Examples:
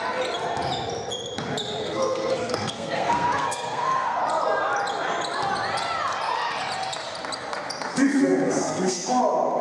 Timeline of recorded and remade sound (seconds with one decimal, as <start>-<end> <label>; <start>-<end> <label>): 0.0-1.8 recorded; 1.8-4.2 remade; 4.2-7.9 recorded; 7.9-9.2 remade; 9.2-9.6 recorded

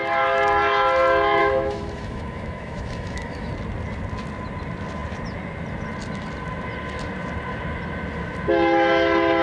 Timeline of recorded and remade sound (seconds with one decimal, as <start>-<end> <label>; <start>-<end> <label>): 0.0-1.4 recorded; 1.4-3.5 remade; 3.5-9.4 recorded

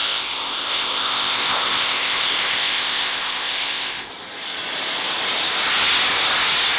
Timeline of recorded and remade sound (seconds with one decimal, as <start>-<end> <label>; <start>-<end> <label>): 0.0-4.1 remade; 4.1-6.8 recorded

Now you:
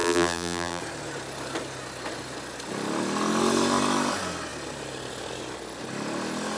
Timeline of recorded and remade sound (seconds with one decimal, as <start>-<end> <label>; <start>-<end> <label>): 0.0-0.8 remade; 0.8-6.6 recorded

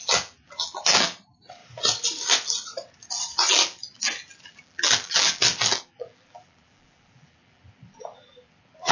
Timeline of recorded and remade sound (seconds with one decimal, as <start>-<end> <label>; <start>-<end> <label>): 0.0-1.6 remade; 1.6-3.5 recorded; 3.5-8.9 remade